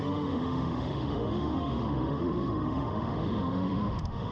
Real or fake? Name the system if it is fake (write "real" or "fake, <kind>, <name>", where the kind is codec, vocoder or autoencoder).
fake, autoencoder, DAC-VAE